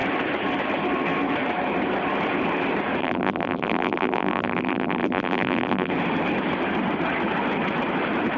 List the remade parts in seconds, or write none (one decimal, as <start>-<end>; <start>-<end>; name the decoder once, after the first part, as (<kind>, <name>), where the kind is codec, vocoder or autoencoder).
3.0-5.9 (vocoder, BigVGAN v2)

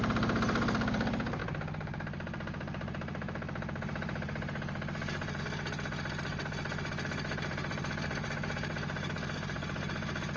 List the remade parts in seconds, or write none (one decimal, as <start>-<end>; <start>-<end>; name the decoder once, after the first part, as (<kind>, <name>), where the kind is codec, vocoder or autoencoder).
1.4-5.4 (vocoder, BigVGAN v2); 6.3-9.9